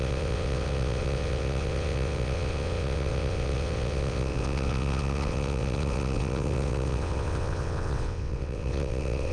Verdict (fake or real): fake